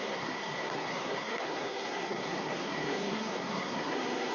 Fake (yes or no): yes